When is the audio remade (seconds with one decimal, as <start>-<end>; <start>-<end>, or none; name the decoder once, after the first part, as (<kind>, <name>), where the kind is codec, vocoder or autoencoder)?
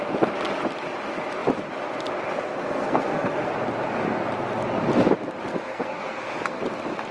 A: 2.6-3.5 (codec, SNAC); 5.5-6.6